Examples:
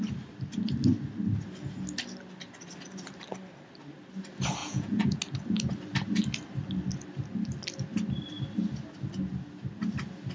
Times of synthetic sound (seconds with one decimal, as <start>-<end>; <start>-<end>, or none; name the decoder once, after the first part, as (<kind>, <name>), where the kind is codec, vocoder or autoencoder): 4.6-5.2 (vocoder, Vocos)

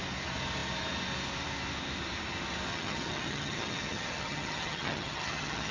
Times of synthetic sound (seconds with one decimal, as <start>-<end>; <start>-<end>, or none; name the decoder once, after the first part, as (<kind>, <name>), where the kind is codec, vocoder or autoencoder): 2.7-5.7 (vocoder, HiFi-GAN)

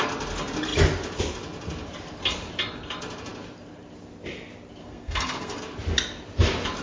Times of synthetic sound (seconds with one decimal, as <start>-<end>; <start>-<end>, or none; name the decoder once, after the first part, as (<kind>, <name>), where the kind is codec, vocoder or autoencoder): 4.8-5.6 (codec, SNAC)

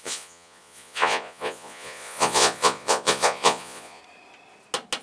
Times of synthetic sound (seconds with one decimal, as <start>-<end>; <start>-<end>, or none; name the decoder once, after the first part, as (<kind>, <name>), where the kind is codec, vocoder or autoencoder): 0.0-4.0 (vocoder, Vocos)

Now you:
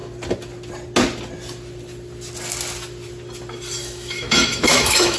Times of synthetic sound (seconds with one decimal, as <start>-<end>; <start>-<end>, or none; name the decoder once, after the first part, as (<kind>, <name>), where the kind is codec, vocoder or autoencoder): 3.8-5.2 (autoencoder, DAC-VAE)

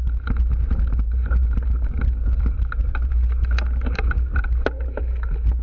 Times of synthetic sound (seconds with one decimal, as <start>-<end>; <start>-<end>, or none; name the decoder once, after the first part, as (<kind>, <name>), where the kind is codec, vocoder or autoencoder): none

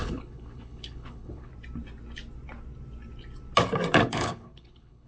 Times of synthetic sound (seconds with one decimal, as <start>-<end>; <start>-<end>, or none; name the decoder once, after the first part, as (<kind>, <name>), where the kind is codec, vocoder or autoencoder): 0.0-1.5 (codec, HILCodec); 4.0-5.1